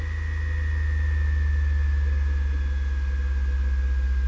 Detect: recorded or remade recorded